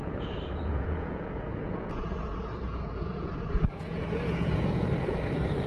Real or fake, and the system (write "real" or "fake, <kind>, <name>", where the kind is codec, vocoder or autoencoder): fake, vocoder, Vocos